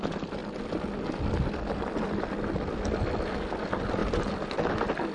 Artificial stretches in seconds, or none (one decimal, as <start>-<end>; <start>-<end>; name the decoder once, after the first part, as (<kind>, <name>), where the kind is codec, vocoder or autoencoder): 4.0-4.6 (vocoder, BigVGAN v2)